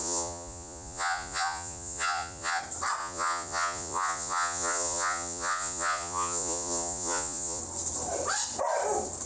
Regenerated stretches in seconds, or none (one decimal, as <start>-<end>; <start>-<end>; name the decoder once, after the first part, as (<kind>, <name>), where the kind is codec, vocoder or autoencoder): 0.0-2.6 (vocoder, Vocos); 3.0-7.6